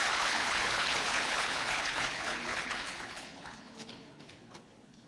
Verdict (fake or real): fake